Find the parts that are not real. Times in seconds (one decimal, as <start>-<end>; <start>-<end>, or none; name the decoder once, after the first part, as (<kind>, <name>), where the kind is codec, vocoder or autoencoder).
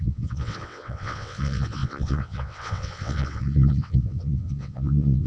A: 0.0-5.3 (vocoder, WaveNeXt)